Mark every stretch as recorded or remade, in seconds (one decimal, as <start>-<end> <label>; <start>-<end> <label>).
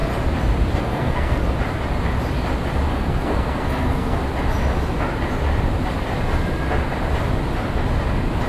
0.0-0.8 recorded; 0.8-1.4 remade; 1.4-2.9 recorded; 2.9-4.2 remade; 4.2-8.5 recorded